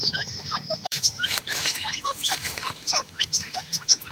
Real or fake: fake